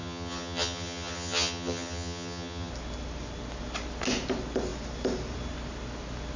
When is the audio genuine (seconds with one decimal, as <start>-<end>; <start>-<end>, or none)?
2.7-6.4